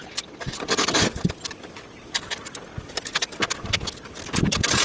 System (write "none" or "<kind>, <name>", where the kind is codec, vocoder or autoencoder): none